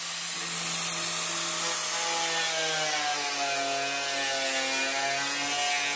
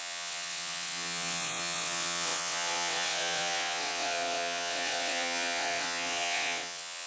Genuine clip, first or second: first